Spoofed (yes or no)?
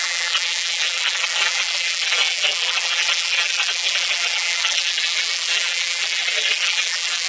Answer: yes